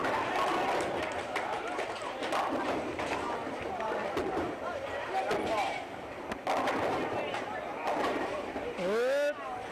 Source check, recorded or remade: recorded